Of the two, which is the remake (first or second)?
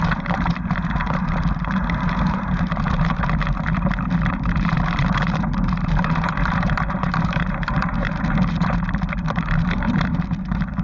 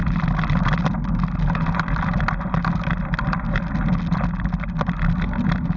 first